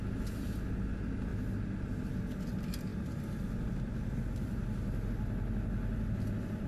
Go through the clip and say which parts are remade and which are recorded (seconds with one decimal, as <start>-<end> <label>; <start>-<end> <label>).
0.0-6.7 recorded